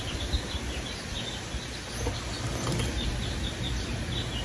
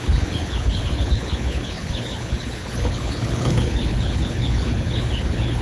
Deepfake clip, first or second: second